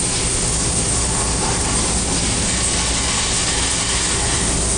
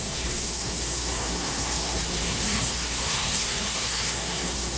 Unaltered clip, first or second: first